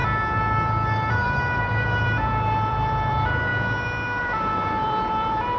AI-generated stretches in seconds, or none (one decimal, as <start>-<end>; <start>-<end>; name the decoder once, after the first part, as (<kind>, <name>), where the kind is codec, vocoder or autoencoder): 1.1-3.5 (vocoder, BigVGAN v2); 4.2-5.6